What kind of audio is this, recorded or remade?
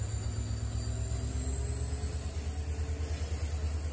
recorded